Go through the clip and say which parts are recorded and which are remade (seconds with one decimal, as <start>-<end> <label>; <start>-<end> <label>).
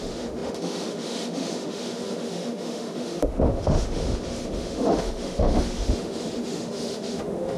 0.0-7.6 remade